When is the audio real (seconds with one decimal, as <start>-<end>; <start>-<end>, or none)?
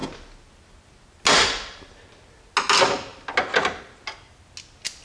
0.0-5.0